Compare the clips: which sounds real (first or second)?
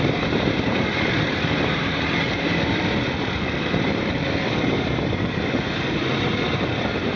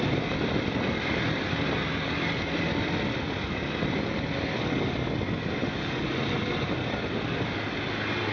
second